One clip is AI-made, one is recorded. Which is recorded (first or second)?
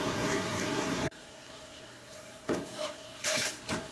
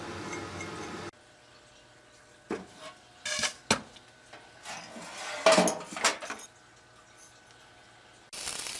second